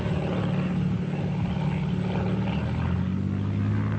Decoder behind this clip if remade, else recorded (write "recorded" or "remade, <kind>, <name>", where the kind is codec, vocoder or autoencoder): recorded